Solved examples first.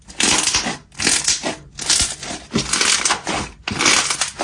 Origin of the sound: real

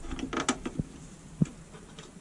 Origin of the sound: real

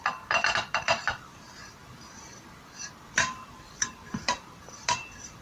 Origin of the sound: fake